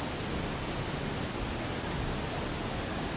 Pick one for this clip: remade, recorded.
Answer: recorded